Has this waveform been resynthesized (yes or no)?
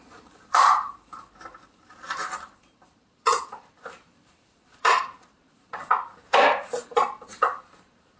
yes